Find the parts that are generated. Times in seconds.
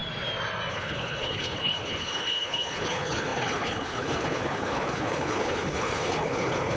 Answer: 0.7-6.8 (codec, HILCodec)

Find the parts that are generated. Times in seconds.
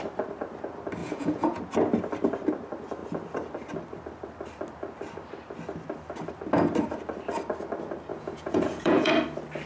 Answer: 1.0-1.6 (vocoder, Vocos); 8.1-9.1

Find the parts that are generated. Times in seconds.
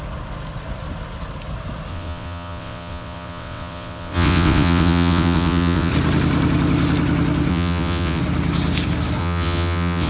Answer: 1.9-5.9 (vocoder, WaveNeXt); 7.5-8.2; 9.2-10.1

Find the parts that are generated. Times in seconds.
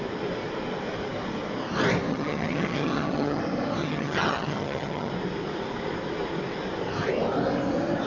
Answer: 2.1-3.4 (vocoder, HiFi-GAN); 3.8-5.1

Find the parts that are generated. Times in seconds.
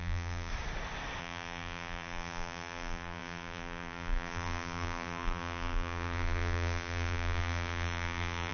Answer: 0.0-0.5 (vocoder, BigVGAN v2); 1.2-8.5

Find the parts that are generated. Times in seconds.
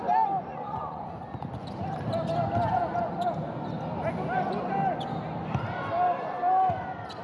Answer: 0.5-1.1 (vocoder, Vocos)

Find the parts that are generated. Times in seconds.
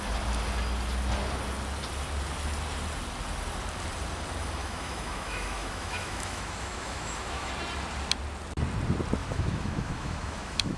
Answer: 4.6-7.5 (autoencoder, DAC-VAE); 9.2-10.8